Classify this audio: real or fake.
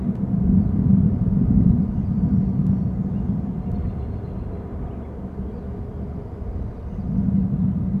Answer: real